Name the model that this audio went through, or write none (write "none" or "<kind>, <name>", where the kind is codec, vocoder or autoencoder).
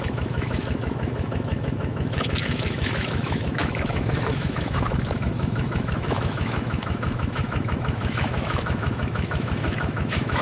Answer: autoencoder, DAC-VAE